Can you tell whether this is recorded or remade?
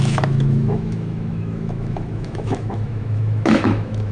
remade